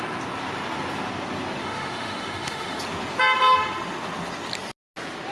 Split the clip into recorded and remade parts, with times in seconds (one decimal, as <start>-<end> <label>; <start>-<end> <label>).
0.0-1.6 recorded; 1.6-2.8 remade; 2.8-5.3 recorded